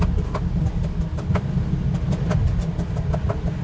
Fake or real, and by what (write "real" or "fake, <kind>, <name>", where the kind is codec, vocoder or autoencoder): real